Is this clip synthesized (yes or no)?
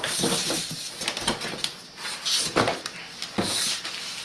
no